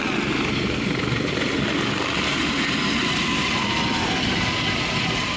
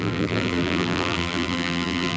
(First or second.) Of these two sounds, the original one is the first